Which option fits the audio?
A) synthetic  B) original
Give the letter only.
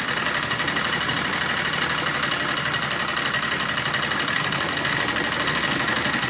B